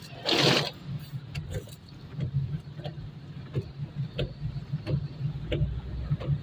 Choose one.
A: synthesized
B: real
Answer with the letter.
B